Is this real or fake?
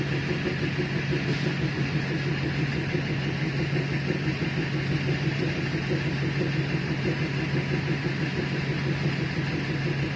real